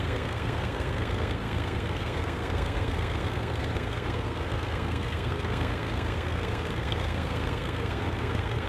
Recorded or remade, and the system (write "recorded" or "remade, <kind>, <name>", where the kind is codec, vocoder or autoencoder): remade, codec, SNAC